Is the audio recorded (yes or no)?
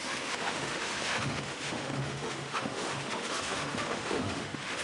no